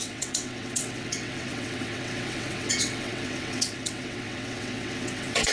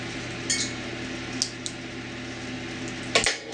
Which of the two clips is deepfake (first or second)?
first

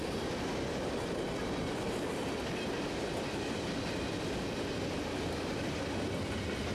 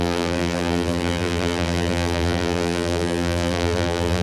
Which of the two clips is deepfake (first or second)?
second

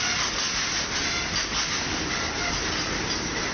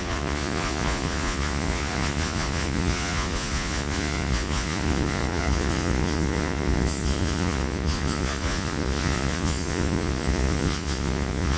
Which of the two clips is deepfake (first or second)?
second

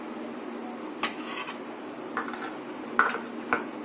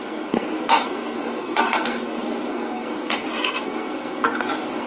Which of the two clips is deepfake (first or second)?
second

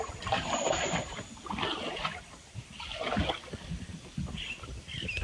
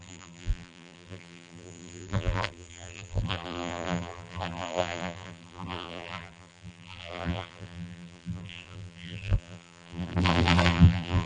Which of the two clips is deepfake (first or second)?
second